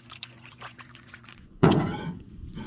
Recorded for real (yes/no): no